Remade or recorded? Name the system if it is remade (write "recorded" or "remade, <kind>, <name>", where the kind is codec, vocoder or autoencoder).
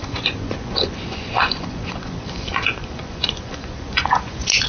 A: remade, vocoder, Vocos